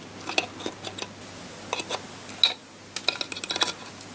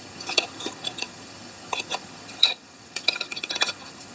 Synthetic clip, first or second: second